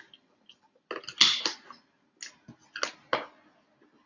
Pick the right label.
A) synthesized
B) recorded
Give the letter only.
B